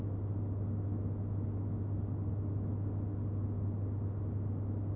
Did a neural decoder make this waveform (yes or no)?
no